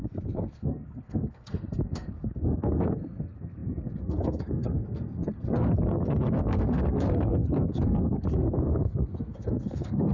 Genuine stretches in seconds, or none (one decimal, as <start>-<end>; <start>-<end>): none